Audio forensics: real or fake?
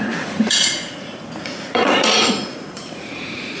fake